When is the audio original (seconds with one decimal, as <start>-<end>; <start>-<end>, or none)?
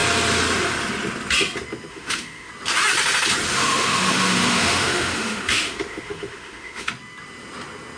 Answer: 0.0-1.9; 2.5-3.5; 6.9-8.0